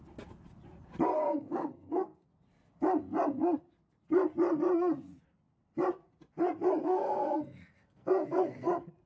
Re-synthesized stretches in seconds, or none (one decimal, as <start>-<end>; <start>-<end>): 1.3-2.3; 6.8-8.7